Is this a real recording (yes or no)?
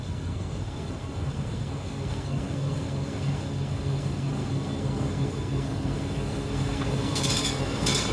no